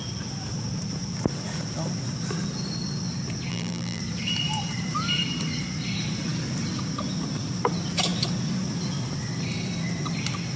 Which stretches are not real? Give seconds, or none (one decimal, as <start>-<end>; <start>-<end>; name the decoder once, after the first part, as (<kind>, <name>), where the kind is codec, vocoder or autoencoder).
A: 3.5-4.0 (vocoder, BigVGAN v2)